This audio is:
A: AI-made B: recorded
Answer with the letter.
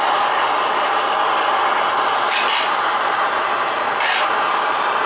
B